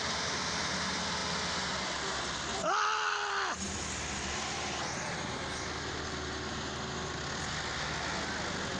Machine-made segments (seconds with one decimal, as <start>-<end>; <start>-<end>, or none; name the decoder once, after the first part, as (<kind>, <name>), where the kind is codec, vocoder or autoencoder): none

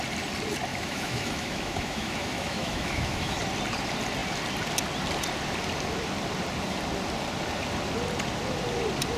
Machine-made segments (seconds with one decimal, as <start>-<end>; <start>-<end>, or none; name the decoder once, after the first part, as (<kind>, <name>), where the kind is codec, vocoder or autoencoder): 0.7-3.4 (autoencoder, DAC-VAE)

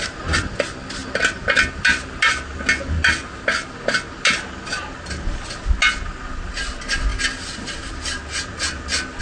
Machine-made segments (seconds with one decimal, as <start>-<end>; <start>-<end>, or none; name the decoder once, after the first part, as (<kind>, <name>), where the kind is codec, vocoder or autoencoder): none